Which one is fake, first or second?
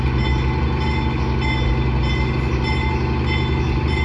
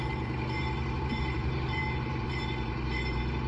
second